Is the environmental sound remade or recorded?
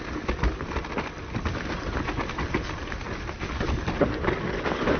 recorded